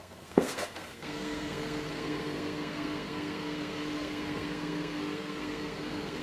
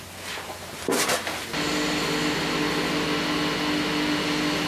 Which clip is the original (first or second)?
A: second